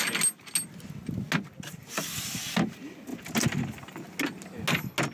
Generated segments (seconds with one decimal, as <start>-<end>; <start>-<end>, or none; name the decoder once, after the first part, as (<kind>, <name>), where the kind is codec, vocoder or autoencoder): none